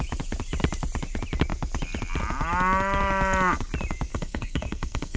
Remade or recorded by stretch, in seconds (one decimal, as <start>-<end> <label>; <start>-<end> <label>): 0.0-4.1 recorded; 4.1-5.2 remade